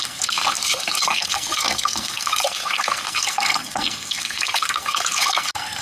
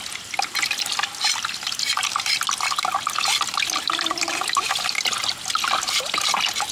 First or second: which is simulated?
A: first